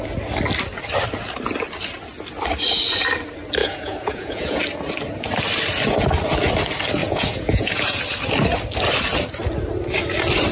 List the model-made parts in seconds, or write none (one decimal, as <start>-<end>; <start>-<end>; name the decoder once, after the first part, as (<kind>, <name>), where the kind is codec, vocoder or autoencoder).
3.6-4.6 (vocoder, Vocos); 7.0-8.0